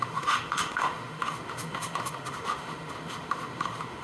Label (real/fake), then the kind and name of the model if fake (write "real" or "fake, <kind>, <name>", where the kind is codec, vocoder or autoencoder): fake, autoencoder, DAC-VAE